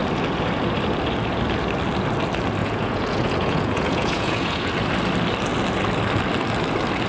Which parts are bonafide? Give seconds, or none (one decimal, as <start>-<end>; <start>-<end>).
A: 0.0-2.6; 4.7-7.1